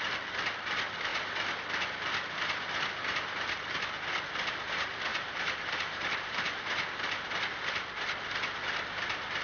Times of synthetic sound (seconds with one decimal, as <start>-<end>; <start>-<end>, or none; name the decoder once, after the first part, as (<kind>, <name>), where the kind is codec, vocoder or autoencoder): 5.1-7.3 (vocoder, BigVGAN v2)